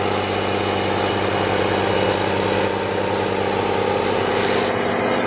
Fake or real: real